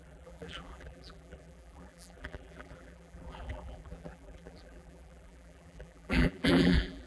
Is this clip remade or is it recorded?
remade